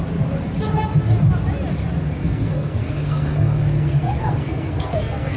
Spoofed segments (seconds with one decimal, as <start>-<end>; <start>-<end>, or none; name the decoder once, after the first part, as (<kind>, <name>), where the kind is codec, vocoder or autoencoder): 2.2-5.4 (codec, SNAC)

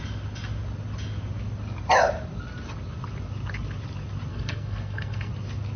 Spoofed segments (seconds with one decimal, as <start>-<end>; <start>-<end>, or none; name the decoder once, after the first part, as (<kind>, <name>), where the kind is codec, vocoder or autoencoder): 4.3-5.3 (codec, SNAC)

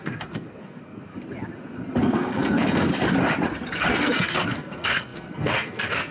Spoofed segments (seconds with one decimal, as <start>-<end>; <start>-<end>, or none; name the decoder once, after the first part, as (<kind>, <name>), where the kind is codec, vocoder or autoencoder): 0.0-1.1 (codec, SNAC); 2.0-2.9; 3.9-6.1